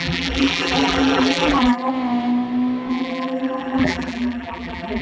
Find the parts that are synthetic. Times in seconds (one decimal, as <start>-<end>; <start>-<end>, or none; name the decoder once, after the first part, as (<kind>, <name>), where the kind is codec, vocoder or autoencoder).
0.0-1.9 (vocoder, BigVGAN v2); 2.9-5.0